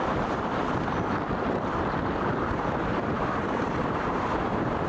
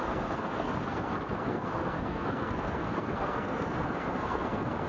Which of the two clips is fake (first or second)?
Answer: second